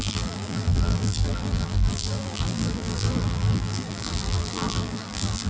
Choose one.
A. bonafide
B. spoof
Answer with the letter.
B